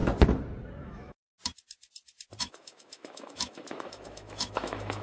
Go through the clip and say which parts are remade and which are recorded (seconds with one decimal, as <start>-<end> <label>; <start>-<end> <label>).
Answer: 0.0-0.8 recorded; 0.8-1.3 remade; 1.3-2.4 recorded; 2.4-5.0 remade